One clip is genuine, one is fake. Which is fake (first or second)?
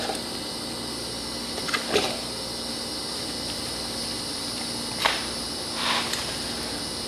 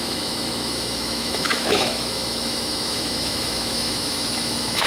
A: second